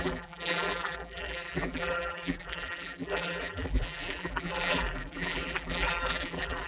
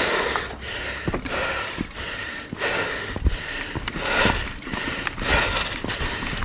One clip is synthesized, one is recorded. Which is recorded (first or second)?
second